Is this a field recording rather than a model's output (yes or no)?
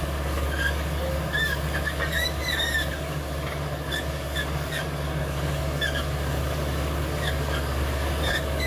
no